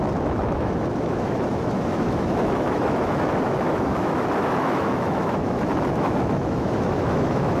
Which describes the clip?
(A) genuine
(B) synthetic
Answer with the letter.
B